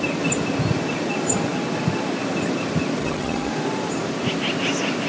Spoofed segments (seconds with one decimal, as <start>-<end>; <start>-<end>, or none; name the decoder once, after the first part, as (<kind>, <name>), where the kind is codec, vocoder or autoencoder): 3.0-3.5 (vocoder, HiFi-GAN)